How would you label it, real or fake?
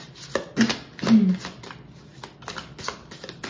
real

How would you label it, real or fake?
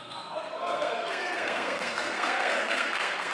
fake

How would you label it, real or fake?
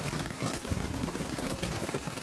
fake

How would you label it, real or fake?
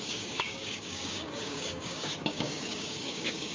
fake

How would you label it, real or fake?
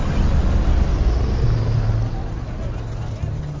real